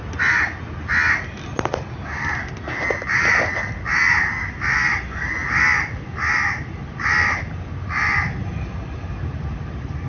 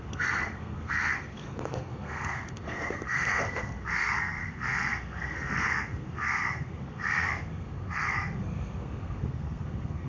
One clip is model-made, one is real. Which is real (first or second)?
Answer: first